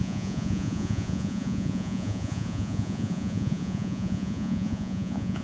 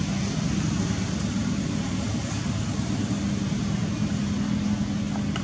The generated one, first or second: first